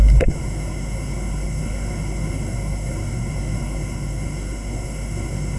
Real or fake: fake